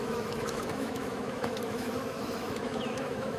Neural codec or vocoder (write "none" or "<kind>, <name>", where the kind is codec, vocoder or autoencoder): autoencoder, DAC-VAE